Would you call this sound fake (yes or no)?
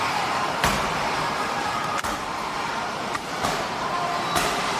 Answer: yes